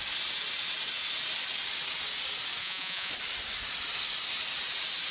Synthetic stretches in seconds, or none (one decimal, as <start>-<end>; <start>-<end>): 2.6-3.1